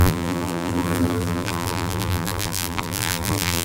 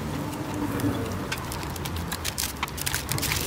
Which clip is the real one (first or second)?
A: second